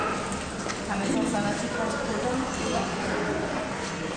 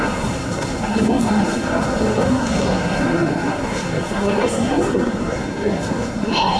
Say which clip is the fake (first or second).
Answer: second